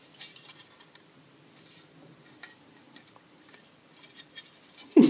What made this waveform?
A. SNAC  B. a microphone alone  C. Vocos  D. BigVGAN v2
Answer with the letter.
D